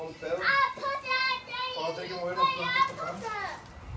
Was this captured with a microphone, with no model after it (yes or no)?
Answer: yes